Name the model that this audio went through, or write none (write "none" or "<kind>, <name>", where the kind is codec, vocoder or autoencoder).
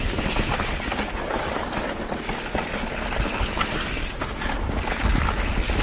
none